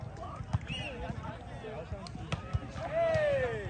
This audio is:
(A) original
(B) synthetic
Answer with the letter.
A